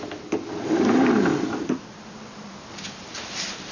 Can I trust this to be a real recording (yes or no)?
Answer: yes